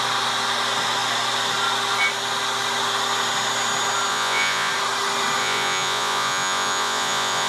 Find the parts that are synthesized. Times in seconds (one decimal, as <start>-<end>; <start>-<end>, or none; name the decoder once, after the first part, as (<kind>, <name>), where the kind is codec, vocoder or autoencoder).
4.1-4.7 (vocoder, Vocos); 5.4-7.5